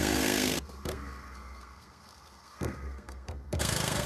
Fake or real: fake